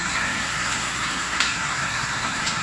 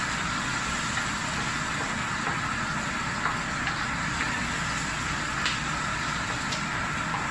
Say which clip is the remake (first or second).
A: first